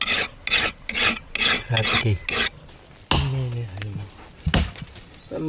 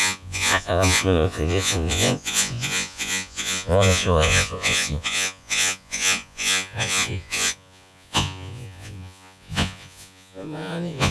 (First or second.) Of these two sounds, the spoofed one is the second